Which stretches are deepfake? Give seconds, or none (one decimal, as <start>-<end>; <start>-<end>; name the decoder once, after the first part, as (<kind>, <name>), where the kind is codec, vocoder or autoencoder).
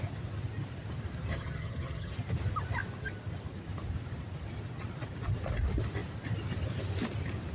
1.3-2.1 (vocoder, HiFi-GAN)